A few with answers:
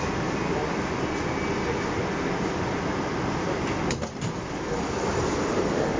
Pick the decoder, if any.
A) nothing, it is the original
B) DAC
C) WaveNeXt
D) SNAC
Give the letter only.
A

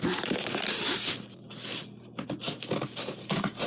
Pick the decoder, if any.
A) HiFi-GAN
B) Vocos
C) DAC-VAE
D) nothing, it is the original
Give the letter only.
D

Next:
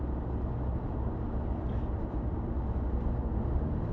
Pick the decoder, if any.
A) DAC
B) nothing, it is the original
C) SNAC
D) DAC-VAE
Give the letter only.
B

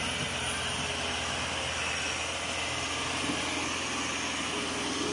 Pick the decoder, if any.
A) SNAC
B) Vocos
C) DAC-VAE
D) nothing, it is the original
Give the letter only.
D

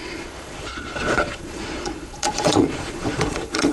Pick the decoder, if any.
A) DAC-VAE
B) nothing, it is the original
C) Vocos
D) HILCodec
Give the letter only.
C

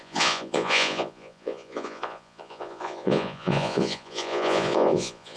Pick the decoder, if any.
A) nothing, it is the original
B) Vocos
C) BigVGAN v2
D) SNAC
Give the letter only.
B